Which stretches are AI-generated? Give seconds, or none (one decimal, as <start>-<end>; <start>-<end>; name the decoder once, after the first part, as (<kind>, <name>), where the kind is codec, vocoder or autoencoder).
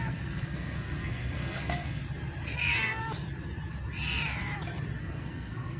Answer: 0.0-2.0 (codec, SNAC); 2.6-3.0; 5.0-5.8